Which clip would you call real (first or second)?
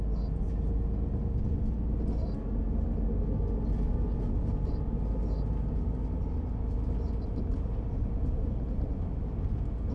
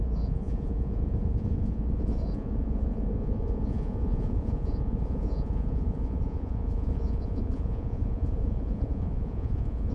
first